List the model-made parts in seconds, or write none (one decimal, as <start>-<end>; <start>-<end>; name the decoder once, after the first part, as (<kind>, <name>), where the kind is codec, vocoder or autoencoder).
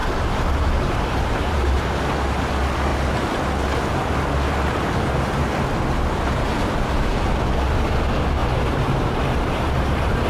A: 0.0-1.8 (vocoder, BigVGAN v2); 8.4-10.3